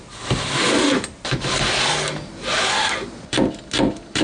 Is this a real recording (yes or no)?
yes